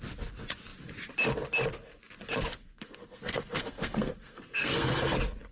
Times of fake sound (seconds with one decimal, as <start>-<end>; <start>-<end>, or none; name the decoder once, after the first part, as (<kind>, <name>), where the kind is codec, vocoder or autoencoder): 2.5-4.9 (codec, SNAC)